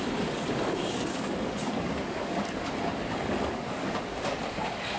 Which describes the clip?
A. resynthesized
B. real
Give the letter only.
A